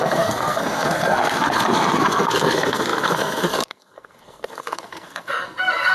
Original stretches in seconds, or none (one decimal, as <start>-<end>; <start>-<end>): none